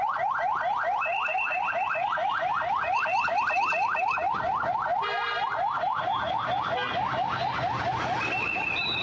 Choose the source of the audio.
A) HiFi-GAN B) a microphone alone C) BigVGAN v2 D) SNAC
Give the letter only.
B